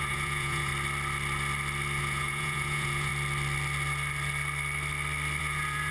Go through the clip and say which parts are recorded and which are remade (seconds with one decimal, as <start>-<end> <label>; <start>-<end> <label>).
0.0-0.7 remade; 0.7-2.0 recorded; 2.0-3.1 remade; 3.1-5.4 recorded; 5.4-5.9 remade